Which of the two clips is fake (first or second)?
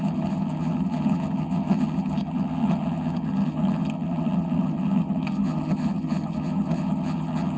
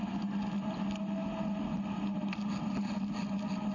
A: first